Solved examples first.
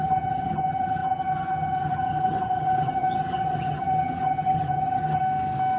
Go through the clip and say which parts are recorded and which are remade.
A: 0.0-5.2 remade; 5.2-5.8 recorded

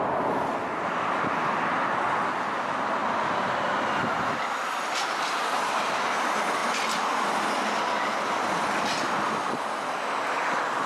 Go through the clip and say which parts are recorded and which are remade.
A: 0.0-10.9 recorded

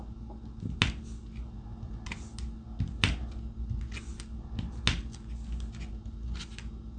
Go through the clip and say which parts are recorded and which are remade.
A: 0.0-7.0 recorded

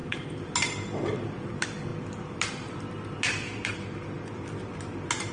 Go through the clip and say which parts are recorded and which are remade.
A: 0.0-5.3 recorded

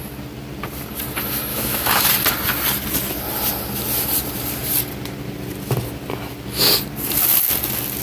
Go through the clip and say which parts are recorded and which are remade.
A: 0.0-1.5 recorded; 1.5-2.1 remade; 2.1-8.0 recorded